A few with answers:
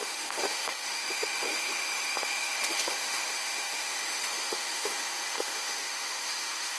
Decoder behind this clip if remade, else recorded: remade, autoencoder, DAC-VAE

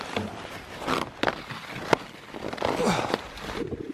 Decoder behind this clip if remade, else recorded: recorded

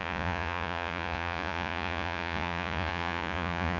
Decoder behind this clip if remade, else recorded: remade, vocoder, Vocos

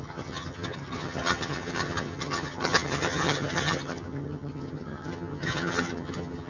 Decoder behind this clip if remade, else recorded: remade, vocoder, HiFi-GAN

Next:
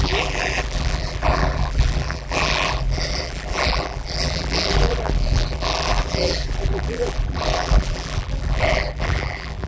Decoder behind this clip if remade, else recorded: remade, vocoder, BigVGAN v2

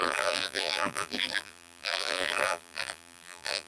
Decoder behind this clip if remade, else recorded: remade, vocoder, BigVGAN v2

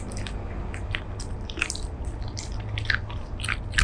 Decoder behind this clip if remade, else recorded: recorded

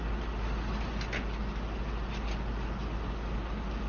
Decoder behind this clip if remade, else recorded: recorded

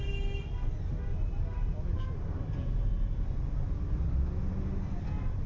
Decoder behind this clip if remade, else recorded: recorded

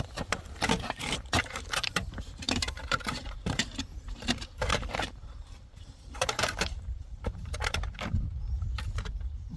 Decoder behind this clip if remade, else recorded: remade, vocoder, BigVGAN v2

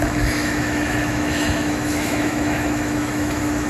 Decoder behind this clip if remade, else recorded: remade, autoencoder, DAC-VAE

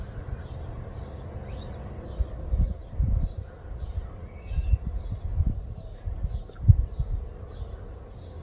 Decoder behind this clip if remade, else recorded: recorded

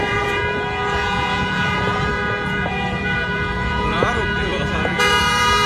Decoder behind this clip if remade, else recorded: remade, vocoder, Vocos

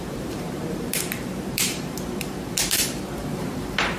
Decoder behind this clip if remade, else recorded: remade, vocoder, BigVGAN v2